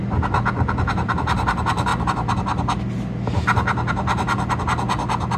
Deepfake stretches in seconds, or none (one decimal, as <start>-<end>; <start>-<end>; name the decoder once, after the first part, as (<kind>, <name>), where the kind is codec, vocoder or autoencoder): 0.8-1.9 (vocoder, BigVGAN v2)